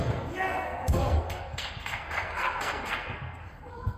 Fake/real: fake